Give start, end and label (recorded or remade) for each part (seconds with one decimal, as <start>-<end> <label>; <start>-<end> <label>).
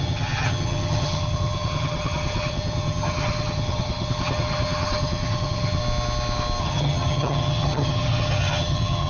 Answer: 0.0-5.8 remade; 5.8-6.6 recorded; 6.6-9.1 remade